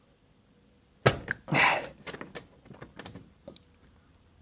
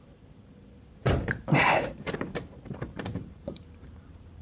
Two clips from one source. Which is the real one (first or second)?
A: first